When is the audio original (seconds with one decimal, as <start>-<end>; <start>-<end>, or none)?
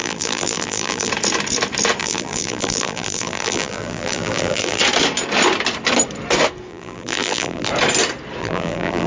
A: 1.1-2.0; 4.8-6.7; 7.7-8.4